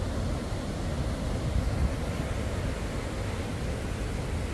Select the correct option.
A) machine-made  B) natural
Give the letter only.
B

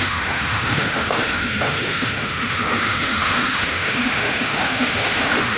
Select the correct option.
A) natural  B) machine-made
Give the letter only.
B